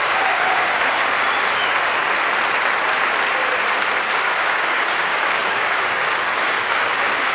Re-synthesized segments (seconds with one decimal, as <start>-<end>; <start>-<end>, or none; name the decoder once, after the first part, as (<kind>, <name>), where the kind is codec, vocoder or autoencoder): 0.0-1.0 (codec, DAC); 4.0-7.3